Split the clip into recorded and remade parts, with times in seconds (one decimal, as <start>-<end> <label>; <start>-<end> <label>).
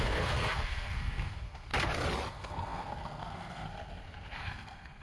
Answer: 0.0-1.7 remade; 1.7-2.3 recorded; 2.3-5.0 remade